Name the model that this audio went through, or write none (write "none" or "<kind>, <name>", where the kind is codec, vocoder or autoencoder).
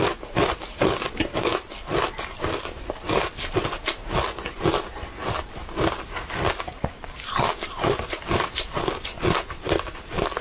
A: none